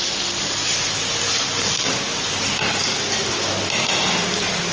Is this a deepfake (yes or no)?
no